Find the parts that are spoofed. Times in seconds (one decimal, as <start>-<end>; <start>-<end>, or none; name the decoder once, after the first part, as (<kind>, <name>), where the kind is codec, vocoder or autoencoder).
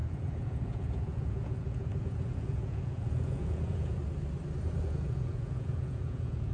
0.0-4.0 (vocoder, Vocos); 4.8-6.5